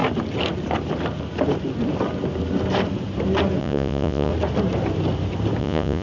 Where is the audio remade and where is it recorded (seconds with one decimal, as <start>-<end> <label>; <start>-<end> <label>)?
0.0-3.6 recorded; 3.6-4.3 remade; 4.3-5.6 recorded; 5.6-6.0 remade